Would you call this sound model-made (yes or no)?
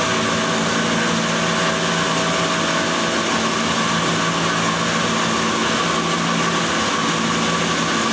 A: no